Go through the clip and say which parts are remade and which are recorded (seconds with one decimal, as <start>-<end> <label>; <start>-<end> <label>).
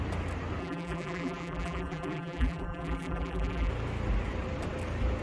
0.0-0.6 recorded; 0.6-3.7 remade; 3.7-5.2 recorded